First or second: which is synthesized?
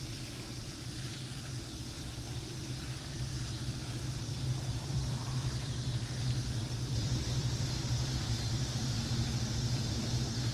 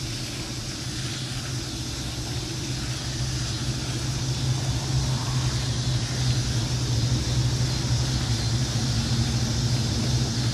first